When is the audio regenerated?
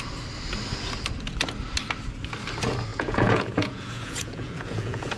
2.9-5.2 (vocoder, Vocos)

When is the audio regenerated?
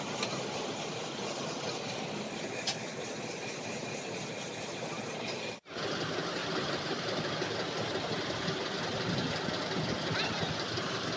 6.4-7.2 (vocoder, BigVGAN v2)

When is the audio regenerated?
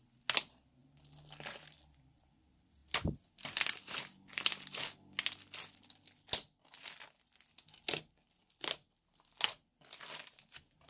none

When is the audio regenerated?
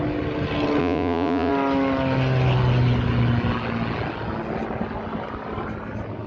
0.8-1.5 (vocoder, Vocos)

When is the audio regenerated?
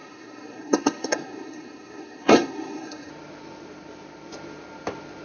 0.0-3.1 (codec, SNAC)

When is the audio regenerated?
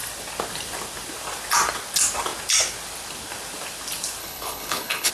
4.2-5.1 (codec, HILCodec)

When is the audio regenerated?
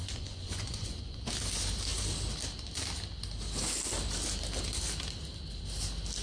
0.0-1.3 (vocoder, Vocos)